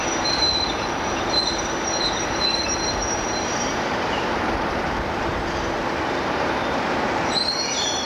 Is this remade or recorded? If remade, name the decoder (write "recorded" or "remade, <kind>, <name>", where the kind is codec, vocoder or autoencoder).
remade, vocoder, BigVGAN v2